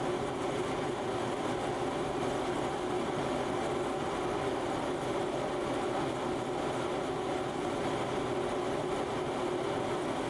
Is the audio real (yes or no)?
yes